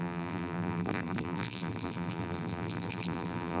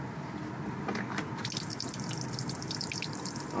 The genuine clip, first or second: second